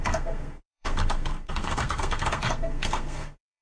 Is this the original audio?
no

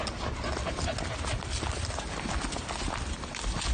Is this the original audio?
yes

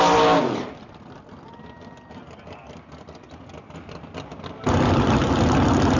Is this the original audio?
yes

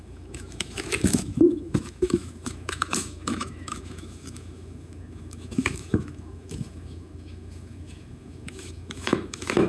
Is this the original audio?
no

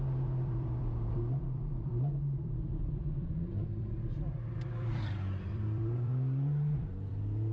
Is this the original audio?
no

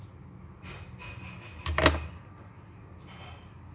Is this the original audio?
yes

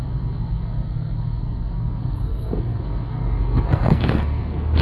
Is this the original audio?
no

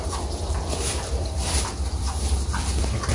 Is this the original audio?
no